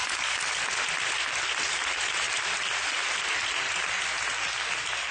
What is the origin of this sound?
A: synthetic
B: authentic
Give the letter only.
A